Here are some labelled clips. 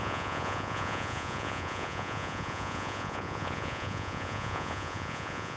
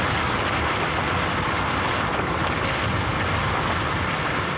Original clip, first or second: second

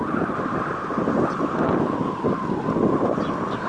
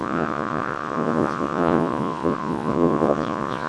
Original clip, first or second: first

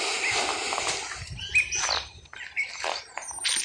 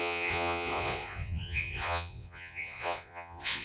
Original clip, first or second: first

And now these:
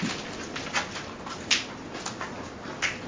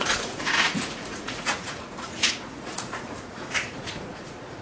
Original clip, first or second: first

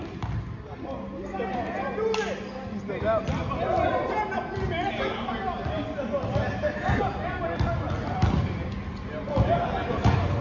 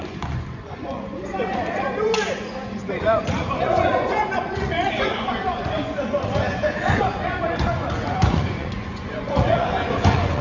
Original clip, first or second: first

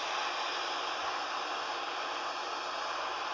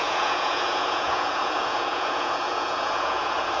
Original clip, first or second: first